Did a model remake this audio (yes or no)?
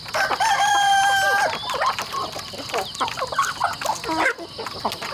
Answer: no